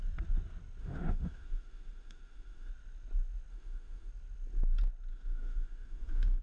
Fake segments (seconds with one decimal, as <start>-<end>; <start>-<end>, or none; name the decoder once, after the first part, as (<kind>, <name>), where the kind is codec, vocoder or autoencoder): 0.8-2.7 (autoencoder, DAC-VAE); 3.5-4.1; 5.1-6.4